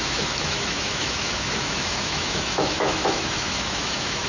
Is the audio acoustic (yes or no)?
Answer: no